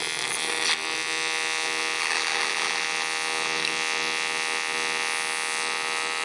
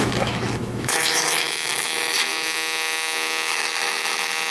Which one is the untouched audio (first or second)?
first